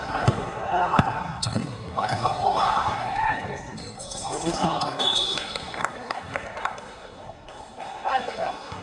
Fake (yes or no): yes